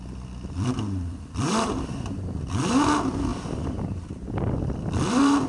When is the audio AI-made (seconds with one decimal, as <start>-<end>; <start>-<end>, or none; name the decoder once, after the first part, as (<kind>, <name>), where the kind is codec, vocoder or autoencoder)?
0.0-5.5 (vocoder, BigVGAN v2)